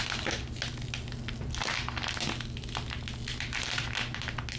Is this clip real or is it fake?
real